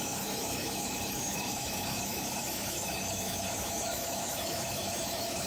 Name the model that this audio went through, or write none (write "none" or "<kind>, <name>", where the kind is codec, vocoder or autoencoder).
autoencoder, DAC-VAE